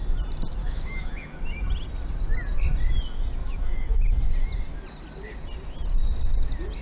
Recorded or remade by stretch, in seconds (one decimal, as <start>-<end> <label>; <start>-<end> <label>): 0.0-0.6 recorded; 0.6-1.4 remade; 1.4-3.4 recorded; 3.4-4.0 remade; 4.0-6.8 recorded